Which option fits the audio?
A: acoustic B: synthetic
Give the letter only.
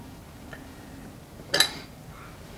A